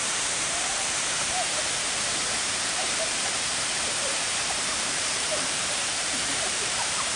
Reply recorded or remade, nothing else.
remade